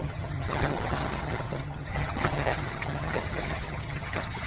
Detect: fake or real fake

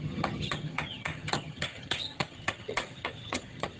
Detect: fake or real fake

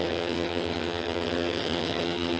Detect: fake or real fake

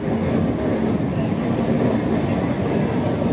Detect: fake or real real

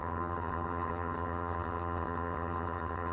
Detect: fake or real fake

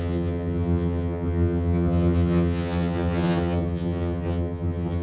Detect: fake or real fake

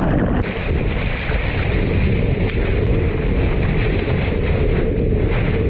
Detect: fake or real real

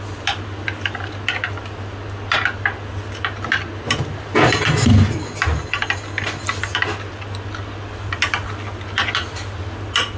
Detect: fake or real real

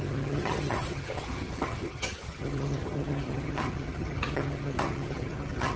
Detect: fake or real fake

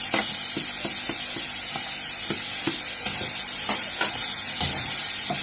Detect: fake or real real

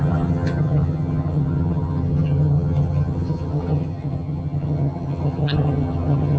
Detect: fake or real fake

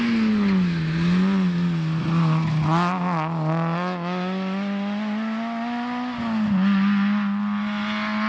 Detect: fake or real real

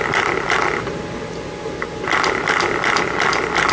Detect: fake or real real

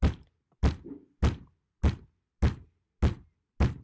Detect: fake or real real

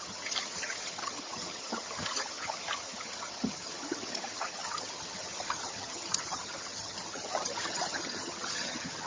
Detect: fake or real fake